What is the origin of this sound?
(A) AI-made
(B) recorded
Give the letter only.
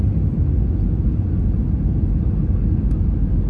B